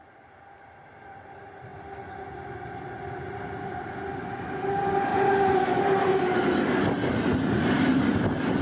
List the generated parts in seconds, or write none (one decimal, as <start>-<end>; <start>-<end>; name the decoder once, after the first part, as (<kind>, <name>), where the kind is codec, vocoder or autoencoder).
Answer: none